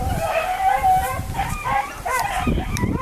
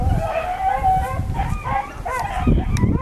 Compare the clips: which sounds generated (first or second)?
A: first